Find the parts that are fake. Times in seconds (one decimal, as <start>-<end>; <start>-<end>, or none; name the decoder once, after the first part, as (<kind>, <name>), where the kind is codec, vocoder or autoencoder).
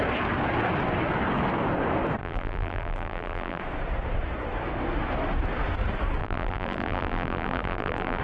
2.2-3.6 (vocoder, BigVGAN v2); 6.2-8.2